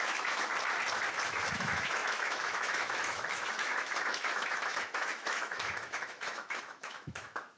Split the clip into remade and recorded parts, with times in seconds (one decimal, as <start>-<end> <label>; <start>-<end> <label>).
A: 0.0-0.5 remade; 0.5-1.2 recorded; 1.2-7.6 remade